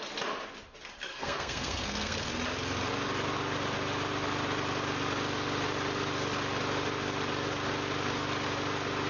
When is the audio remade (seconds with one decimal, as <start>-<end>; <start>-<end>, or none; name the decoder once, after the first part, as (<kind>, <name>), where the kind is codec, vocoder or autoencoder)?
1.1-2.3 (codec, SNAC)